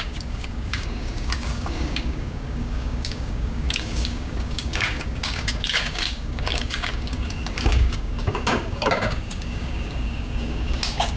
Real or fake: fake